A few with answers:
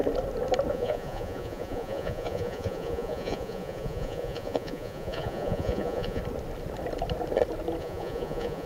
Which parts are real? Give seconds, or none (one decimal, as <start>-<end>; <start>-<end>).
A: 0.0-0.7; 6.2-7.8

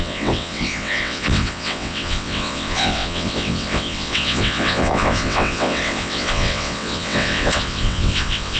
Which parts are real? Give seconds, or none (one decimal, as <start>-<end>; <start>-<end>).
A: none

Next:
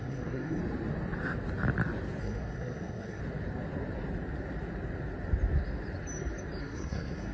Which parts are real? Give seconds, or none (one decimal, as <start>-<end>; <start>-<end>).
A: 0.6-2.2; 3.2-6.6

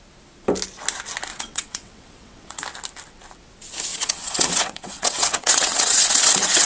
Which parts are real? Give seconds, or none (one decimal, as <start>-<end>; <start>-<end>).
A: 0.0-1.3; 2.6-3.9

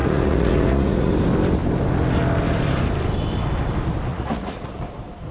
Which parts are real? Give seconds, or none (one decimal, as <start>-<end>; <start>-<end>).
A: 1.1-4.1; 4.7-5.3

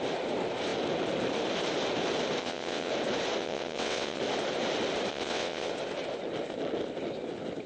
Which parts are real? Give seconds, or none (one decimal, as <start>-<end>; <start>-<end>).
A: 0.0-2.4; 2.9-3.4; 4.2-5.1; 5.7-7.7

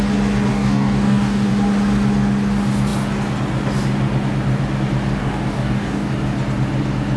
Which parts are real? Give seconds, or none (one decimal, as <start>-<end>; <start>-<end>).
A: 0.0-0.5; 1.5-5.2; 6.1-7.2

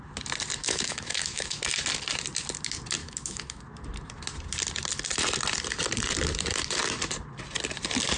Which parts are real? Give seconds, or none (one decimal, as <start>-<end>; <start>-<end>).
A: 0.0-0.6; 1.6-3.0; 3.6-8.2